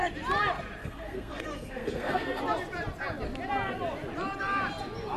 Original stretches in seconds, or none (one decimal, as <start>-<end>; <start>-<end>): 0.0-0.8; 2.4-5.2